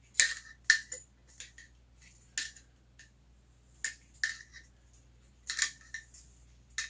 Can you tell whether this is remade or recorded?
recorded